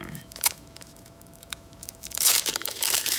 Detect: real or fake fake